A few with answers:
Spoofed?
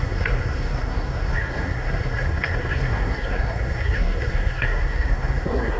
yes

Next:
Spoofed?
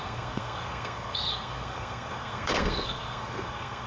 yes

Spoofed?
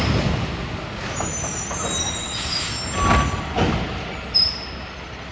no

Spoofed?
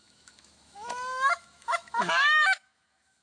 yes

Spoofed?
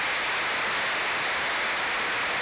no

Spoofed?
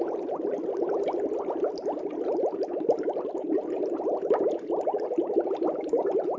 no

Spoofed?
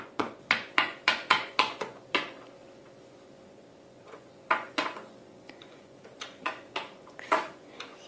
yes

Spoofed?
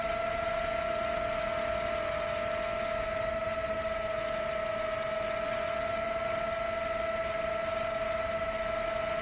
no